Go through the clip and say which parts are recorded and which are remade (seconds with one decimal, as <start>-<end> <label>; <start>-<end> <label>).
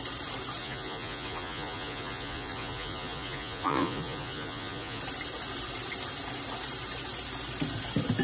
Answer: 0.0-0.6 recorded; 0.6-5.0 remade; 5.0-8.2 recorded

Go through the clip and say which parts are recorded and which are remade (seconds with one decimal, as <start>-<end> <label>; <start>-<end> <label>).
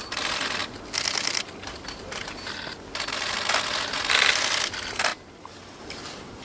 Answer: 0.0-6.4 recorded